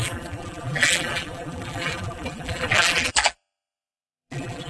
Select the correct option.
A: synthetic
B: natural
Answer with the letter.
A